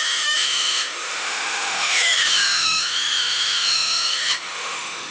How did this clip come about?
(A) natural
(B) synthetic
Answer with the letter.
B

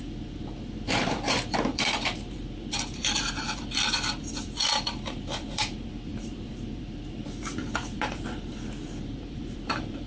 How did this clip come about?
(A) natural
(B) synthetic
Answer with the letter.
B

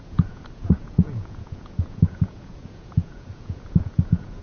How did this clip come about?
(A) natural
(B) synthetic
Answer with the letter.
B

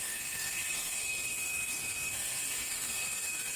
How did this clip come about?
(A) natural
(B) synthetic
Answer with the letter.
B